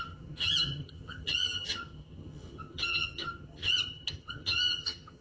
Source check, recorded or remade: remade